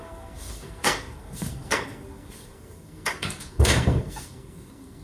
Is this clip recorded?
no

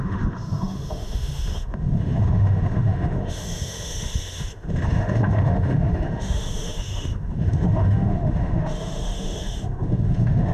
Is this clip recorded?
no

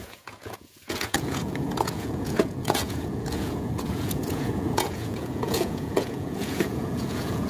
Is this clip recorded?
no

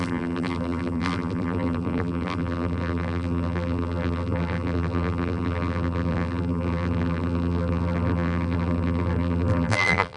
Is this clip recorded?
no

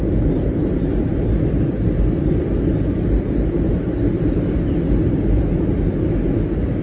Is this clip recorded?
yes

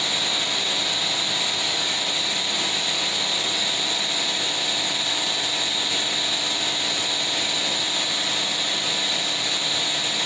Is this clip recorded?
yes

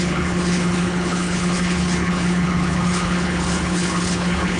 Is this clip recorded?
no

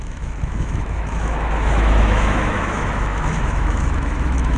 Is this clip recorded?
no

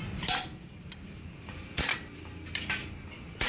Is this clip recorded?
yes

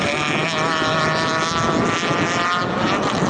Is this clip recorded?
yes